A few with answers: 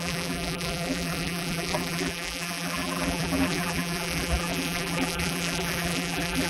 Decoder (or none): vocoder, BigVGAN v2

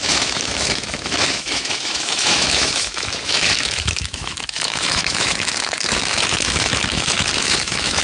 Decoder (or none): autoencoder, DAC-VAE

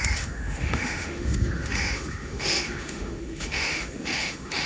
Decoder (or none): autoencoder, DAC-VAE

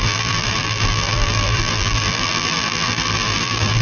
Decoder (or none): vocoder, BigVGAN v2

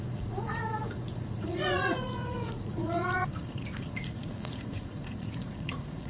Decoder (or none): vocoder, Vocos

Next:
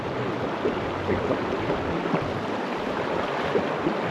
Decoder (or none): none